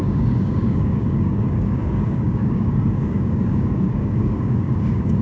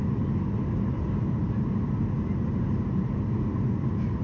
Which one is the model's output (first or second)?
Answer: first